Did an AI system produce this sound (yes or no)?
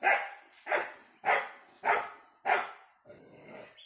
no